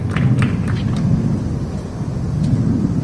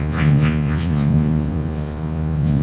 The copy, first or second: second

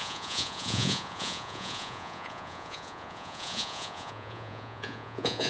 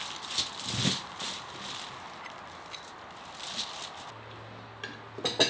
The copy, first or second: first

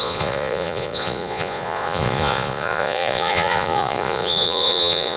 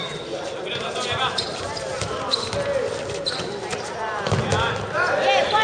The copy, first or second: first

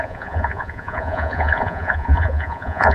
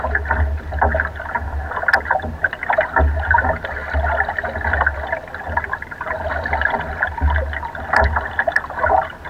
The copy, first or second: first